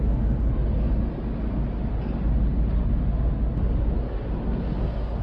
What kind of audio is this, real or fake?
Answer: real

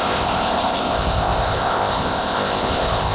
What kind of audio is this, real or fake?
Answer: fake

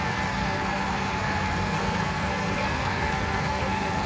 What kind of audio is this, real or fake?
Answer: fake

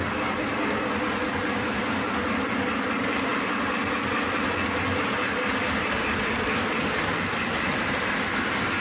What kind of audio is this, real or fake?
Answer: real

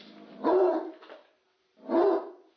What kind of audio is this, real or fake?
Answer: real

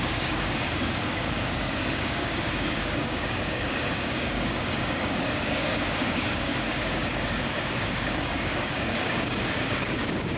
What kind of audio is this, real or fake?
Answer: fake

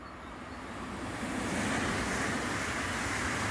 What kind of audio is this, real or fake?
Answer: real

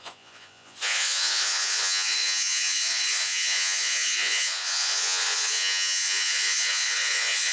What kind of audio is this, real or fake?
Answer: fake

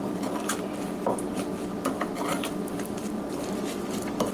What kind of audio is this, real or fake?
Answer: fake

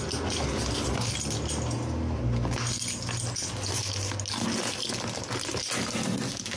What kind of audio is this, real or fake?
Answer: real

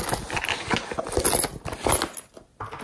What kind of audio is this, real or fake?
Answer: real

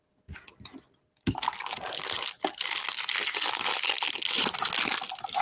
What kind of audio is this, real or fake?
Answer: real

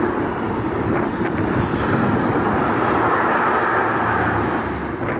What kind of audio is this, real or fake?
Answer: real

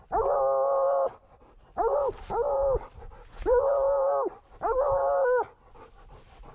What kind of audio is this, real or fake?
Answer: real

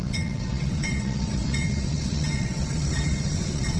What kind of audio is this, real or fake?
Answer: fake